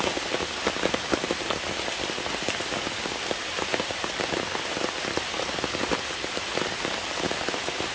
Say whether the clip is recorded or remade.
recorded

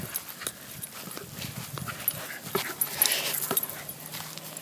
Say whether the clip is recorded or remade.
recorded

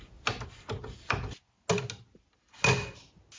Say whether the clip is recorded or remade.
recorded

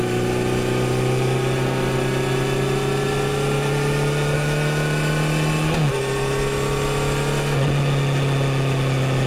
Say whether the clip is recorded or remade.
recorded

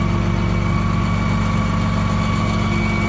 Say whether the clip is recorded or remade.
recorded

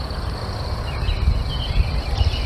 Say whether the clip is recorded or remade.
recorded